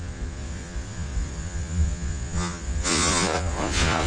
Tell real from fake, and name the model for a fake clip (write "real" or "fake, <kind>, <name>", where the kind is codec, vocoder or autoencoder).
fake, vocoder, Vocos